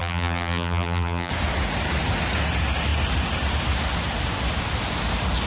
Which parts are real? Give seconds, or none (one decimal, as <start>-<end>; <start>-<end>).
1.3-5.5